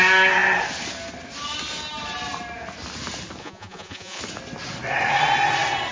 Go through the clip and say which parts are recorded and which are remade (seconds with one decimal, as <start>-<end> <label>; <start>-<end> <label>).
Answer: 0.0-3.4 recorded; 3.4-4.2 remade; 4.2-5.9 recorded